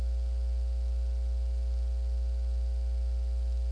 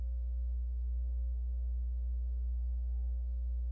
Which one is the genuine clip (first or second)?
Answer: first